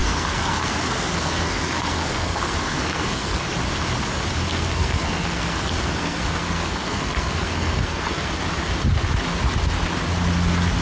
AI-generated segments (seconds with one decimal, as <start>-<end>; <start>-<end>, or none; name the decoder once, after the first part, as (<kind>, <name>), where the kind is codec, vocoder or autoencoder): 0.0-3.5 (codec, SNAC); 4.5-8.3